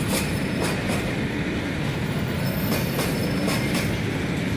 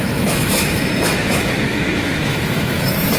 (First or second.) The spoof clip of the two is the second